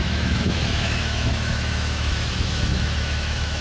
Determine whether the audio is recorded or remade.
remade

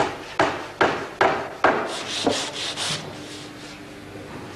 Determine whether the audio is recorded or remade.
recorded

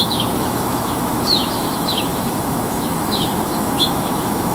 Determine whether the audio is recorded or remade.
remade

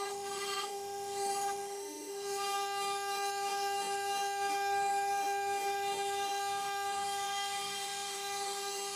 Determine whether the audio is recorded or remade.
remade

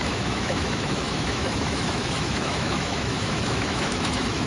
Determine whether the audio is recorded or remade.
remade